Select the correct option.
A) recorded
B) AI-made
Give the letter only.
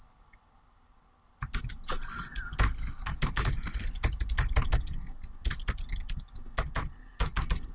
A